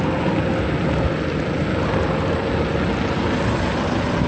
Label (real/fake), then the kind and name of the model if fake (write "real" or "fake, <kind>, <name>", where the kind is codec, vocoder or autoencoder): real